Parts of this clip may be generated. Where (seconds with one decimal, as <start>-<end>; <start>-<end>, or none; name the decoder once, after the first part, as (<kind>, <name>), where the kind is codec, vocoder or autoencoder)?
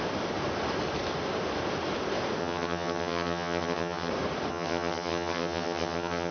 2.4-4.1 (vocoder, HiFi-GAN); 4.5-6.3